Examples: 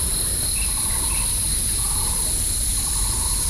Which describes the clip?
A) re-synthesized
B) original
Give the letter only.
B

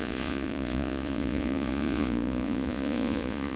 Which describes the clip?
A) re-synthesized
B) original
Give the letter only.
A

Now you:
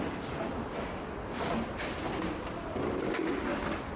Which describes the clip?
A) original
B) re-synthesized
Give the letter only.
A